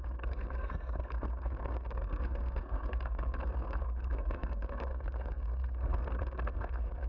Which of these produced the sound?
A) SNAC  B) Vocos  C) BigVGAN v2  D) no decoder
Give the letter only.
A